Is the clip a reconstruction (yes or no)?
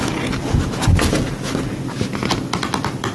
no